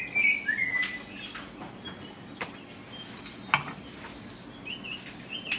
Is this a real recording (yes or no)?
yes